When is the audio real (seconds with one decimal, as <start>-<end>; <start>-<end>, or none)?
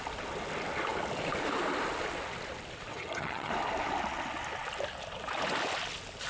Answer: 0.0-2.9; 3.5-6.3